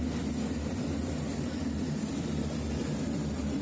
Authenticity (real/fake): fake